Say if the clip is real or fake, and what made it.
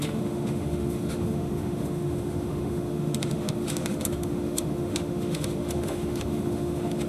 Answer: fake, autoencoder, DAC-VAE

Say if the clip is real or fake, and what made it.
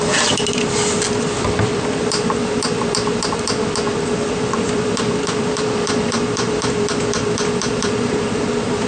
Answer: fake, vocoder, BigVGAN v2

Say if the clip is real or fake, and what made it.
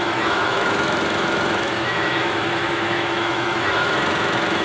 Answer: fake, autoencoder, DAC-VAE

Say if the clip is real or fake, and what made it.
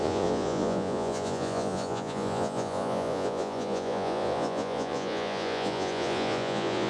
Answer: fake, vocoder, Vocos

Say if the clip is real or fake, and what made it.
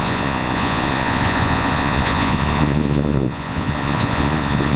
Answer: fake, vocoder, Vocos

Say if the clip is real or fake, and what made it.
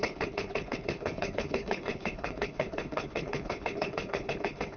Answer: fake, codec, HILCodec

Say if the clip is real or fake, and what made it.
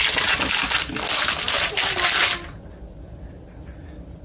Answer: real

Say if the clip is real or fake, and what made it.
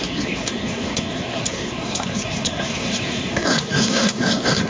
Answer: fake, codec, SNAC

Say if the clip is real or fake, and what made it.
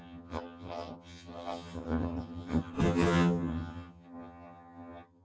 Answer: fake, vocoder, HiFi-GAN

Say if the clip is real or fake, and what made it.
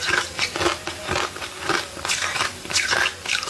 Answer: real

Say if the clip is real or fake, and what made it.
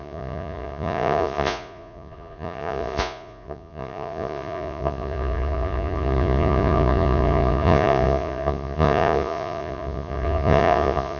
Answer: fake, vocoder, Vocos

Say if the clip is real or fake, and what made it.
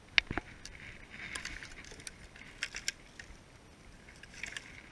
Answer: real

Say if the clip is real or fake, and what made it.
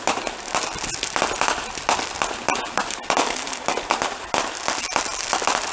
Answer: real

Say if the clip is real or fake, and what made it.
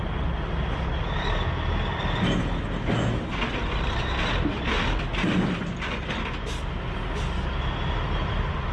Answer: real